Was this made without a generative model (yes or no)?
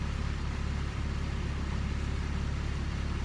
no